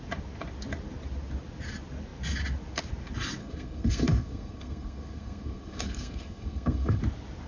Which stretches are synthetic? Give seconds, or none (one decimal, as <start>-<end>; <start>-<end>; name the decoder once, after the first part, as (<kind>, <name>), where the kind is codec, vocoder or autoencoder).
3.4-7.0 (codec, SNAC)